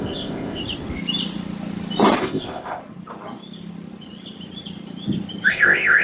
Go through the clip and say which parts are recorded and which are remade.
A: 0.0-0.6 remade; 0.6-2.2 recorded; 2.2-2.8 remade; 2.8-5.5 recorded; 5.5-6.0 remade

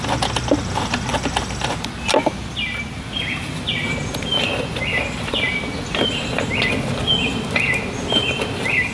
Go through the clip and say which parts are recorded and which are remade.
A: 0.0-8.9 recorded

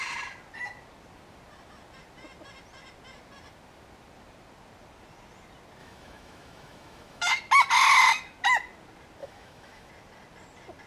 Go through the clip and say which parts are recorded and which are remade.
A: 0.0-5.8 recorded; 5.8-7.3 remade; 7.3-9.2 recorded; 9.2-9.9 remade; 9.9-10.9 recorded

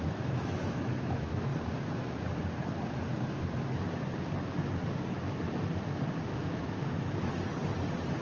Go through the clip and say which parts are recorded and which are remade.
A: 0.0-1.5 remade; 1.5-6.3 recorded; 6.3-7.3 remade; 7.3-8.2 recorded